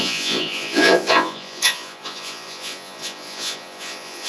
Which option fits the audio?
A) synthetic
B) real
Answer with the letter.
A